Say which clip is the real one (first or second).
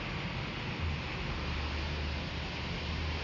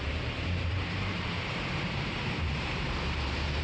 first